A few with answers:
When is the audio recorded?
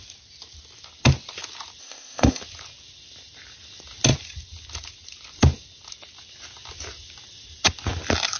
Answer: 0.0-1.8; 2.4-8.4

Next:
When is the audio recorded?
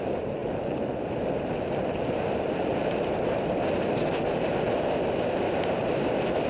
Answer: 0.0-6.5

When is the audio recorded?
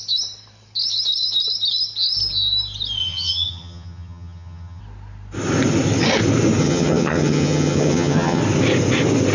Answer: 0.0-3.0; 4.8-6.6; 8.4-9.3